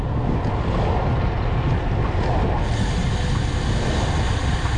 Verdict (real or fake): real